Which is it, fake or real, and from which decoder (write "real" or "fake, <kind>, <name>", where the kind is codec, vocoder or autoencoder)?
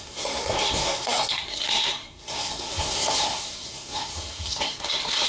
fake, codec, SNAC